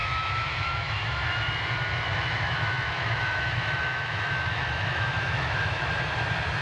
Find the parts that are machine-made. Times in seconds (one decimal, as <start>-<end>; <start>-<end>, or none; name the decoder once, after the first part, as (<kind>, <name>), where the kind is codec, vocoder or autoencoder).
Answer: 0.0-1.5 (autoencoder, DAC-VAE); 2.1-5.9